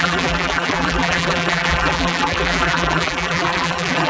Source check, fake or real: fake